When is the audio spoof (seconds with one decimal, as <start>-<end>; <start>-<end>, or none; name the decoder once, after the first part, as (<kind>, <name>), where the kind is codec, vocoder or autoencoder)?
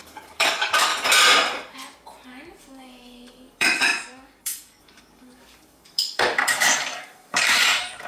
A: 0.0-0.9 (codec, DAC); 2.6-8.1